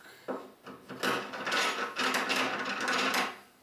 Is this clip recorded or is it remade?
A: recorded